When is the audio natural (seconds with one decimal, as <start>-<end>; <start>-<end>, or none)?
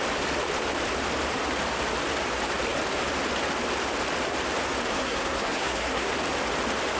0.0-4.9; 6.1-7.0